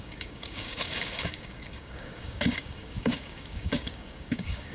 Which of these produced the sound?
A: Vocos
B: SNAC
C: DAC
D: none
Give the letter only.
C